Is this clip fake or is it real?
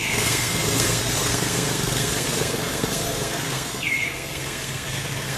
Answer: fake